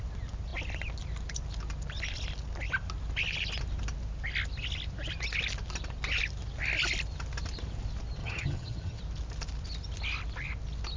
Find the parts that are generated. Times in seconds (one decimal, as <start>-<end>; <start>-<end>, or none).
8.2-9.0